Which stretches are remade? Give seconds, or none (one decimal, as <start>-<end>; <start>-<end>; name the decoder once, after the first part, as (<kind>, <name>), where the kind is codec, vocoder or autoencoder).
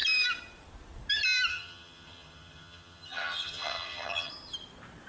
1.5-4.3 (vocoder, HiFi-GAN)